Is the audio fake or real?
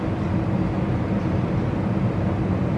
real